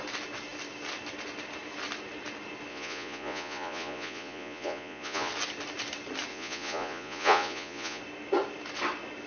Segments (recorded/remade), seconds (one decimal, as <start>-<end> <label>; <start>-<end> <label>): 0.0-2.7 recorded; 2.7-5.3 remade; 5.3-6.3 recorded; 6.3-8.0 remade; 8.0-9.3 recorded